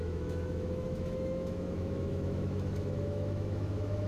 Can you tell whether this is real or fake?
fake